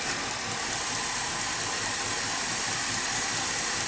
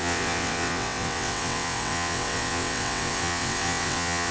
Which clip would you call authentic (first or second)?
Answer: first